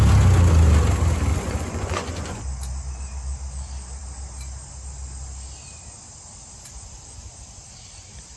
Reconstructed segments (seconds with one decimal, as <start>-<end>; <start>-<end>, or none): 1.3-2.4